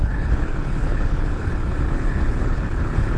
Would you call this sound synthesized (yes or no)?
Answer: yes